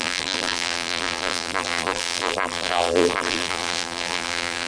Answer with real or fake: fake